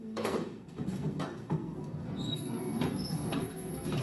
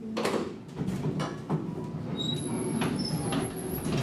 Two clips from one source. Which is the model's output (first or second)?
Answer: first